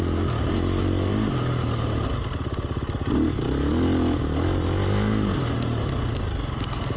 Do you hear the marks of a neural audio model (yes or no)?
no